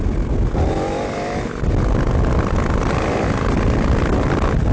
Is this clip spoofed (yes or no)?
no